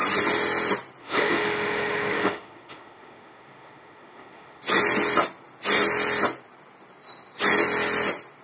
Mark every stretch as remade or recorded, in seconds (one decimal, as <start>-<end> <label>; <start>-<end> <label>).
0.0-1.0 recorded; 1.0-4.6 remade; 4.6-8.4 recorded